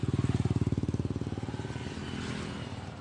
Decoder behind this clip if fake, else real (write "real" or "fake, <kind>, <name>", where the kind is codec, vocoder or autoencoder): real